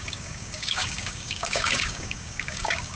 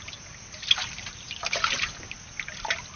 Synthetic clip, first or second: first